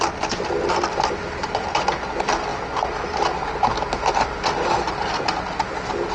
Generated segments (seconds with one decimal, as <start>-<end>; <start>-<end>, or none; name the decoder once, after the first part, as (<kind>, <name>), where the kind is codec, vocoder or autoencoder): none